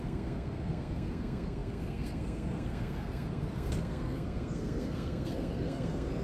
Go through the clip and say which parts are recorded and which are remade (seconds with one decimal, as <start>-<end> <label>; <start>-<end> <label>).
0.0-6.2 remade